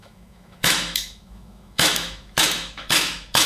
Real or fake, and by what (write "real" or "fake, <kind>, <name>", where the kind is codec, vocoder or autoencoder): fake, autoencoder, DAC-VAE